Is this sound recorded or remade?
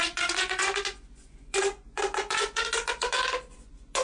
remade